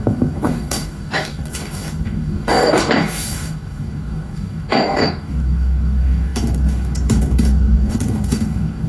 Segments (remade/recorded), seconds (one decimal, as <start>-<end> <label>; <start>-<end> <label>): 0.0-8.9 remade